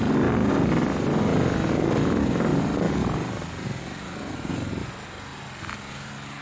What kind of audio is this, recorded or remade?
recorded